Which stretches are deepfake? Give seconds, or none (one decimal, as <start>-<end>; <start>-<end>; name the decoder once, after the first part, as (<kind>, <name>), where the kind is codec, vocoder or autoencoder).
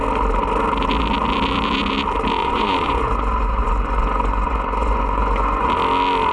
2.4-5.7 (vocoder, Vocos)